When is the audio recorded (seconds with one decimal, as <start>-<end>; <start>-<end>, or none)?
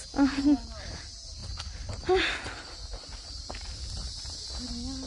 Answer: 0.0-5.1